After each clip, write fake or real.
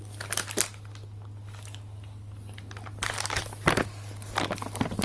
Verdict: real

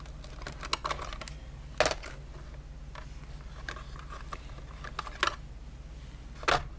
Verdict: real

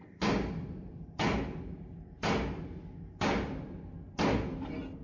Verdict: real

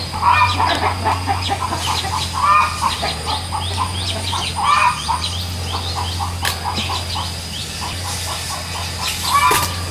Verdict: real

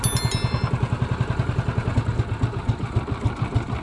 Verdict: real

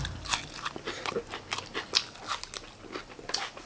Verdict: real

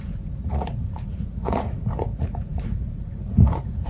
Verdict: fake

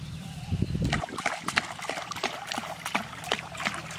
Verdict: fake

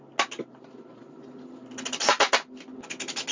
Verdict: real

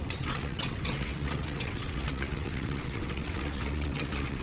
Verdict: fake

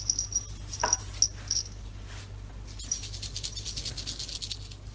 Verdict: real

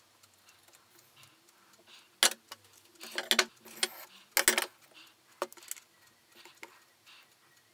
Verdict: real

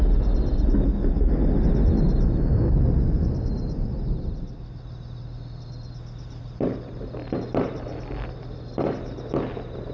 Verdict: real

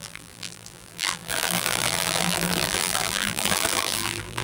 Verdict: fake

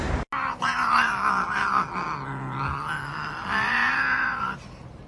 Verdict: real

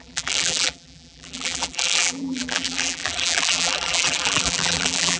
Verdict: fake